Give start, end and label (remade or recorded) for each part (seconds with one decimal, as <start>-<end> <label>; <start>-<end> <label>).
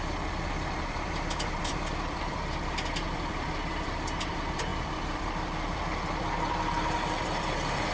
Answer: 0.0-7.9 remade